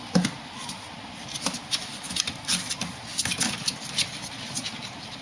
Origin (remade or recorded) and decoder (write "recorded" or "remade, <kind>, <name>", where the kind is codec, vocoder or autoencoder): recorded